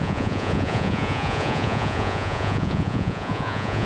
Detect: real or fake fake